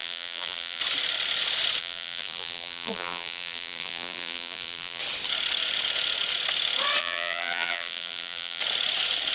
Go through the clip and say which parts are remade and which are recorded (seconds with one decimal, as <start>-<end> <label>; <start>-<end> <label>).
0.0-0.8 remade; 0.8-1.8 recorded; 1.8-5.0 remade; 5.0-7.0 recorded; 7.0-8.6 remade; 8.6-9.3 recorded